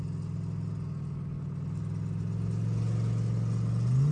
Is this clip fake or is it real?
real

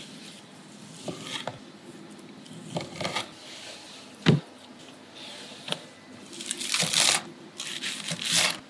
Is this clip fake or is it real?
real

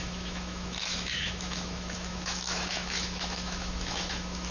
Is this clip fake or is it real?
fake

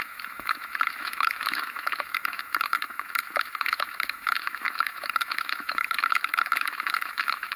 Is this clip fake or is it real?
fake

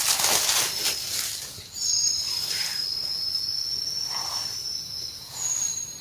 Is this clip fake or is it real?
real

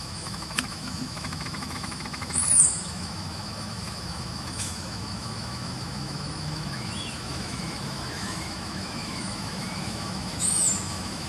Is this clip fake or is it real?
fake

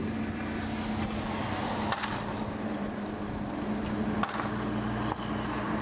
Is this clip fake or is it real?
real